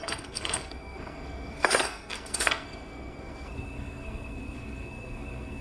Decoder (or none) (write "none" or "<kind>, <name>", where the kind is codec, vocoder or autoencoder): codec, SNAC